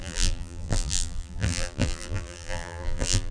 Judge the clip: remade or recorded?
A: remade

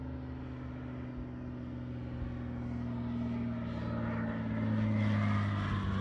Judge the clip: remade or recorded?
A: recorded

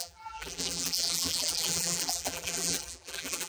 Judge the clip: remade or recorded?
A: remade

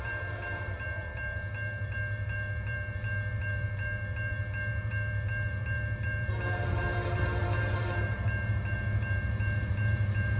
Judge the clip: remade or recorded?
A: remade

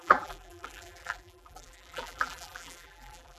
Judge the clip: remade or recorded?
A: remade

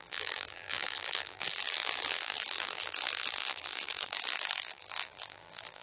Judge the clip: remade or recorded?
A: remade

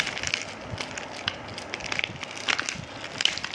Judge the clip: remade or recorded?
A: recorded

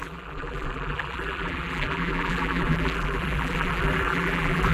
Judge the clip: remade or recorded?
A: remade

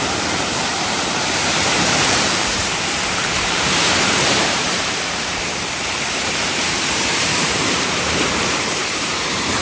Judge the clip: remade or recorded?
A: remade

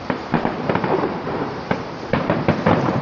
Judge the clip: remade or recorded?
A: remade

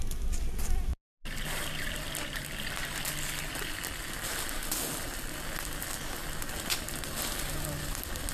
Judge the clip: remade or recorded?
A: recorded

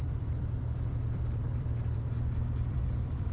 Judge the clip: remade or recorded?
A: remade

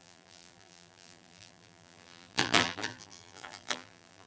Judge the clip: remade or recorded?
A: remade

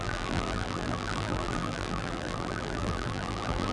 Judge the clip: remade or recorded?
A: remade